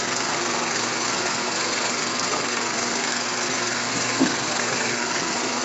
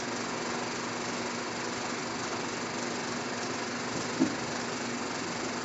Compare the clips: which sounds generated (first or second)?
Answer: first